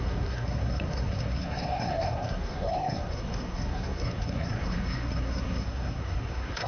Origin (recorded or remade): remade